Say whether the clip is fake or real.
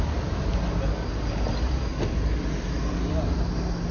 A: real